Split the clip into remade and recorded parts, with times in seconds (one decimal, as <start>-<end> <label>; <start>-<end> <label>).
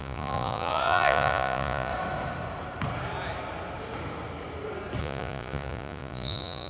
0.0-1.9 remade; 1.9-5.0 recorded; 5.0-6.7 remade